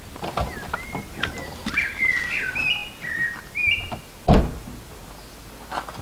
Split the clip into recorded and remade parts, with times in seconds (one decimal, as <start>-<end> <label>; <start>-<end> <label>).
0.0-6.0 recorded